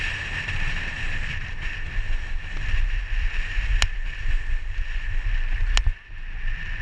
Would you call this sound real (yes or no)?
yes